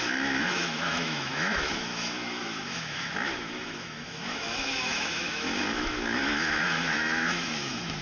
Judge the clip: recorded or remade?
remade